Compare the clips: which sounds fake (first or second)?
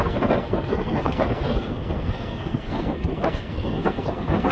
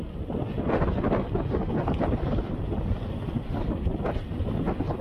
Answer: first